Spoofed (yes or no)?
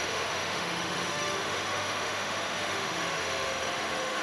yes